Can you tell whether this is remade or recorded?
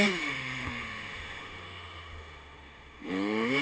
remade